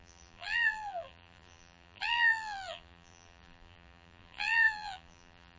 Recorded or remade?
remade